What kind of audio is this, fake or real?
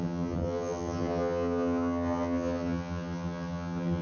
fake